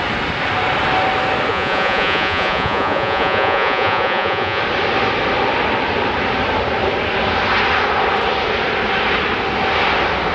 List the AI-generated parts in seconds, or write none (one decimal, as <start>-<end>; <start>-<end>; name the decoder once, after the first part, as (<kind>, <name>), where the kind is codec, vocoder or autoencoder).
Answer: 1.5-4.6 (vocoder, Vocos)

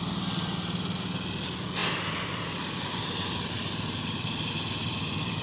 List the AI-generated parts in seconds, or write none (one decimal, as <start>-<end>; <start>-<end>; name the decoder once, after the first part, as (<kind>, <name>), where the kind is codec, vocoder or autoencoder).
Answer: none

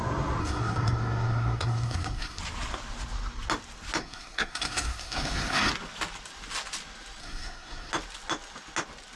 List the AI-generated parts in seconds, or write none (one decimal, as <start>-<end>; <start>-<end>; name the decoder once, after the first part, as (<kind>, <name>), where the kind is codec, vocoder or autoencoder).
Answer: 0.4-2.4 (codec, SNAC); 4.0-5.7; 7.2-7.9

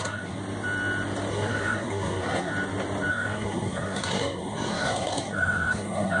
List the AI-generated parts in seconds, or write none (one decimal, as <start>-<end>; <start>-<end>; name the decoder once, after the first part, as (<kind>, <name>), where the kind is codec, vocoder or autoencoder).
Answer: 0.0-0.4 (codec, SNAC); 1.3-2.5; 3.1-6.2